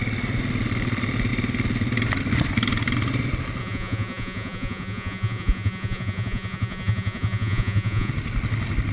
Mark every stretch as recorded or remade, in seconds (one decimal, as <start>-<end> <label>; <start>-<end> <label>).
0.0-3.6 recorded; 3.6-8.1 remade; 8.1-8.9 recorded